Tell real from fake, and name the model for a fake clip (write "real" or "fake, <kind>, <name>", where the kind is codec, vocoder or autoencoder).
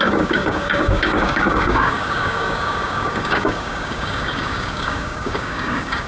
fake, codec, DAC